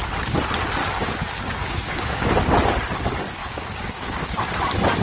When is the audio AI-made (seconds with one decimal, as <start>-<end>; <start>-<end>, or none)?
0.8-2.3; 3.4-4.3

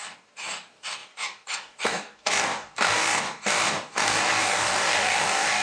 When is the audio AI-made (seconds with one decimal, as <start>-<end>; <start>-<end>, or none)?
0.0-5.6

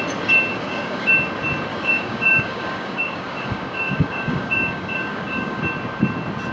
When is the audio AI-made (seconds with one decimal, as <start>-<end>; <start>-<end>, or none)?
0.5-1.1; 1.7-5.6